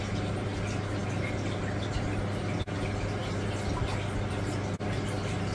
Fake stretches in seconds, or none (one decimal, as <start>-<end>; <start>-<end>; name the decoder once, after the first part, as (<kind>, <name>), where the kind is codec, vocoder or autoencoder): none